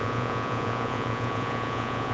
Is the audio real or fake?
fake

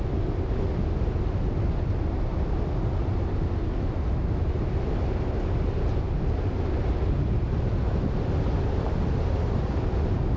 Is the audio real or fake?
real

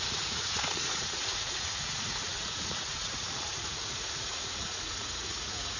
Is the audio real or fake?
fake